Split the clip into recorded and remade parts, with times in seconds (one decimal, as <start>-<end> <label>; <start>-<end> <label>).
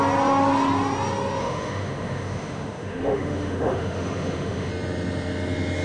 0.0-1.4 recorded; 1.4-4.7 remade; 4.7-5.8 recorded